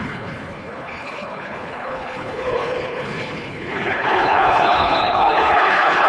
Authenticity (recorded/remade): remade